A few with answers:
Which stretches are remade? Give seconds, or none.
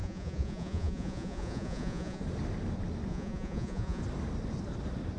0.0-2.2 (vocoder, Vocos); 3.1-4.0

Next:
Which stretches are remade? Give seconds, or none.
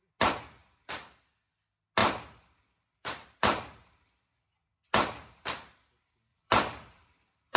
2.0-4.5 (vocoder, BigVGAN v2); 6.3-7.6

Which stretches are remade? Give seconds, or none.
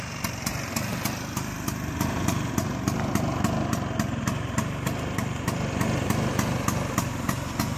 none